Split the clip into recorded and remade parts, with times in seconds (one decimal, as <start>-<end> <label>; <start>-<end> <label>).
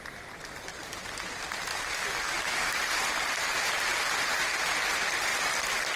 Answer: 0.0-1.7 recorded; 1.7-3.0 remade; 3.0-6.0 recorded